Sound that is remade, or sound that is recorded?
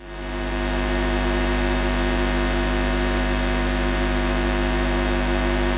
remade